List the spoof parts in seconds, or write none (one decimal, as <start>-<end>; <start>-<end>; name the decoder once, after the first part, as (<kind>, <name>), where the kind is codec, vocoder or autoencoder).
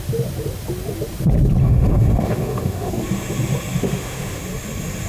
1.6-2.9 (autoencoder, DAC-VAE); 3.8-4.4